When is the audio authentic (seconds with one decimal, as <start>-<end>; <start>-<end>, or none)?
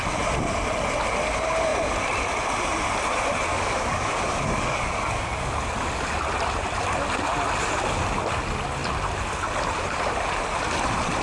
0.0-3.5; 5.5-11.2